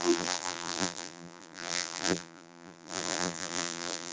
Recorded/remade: remade